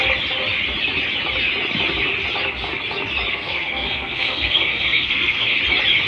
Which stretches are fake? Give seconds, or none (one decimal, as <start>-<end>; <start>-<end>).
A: 3.3-5.6